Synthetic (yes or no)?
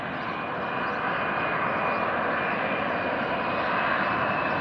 no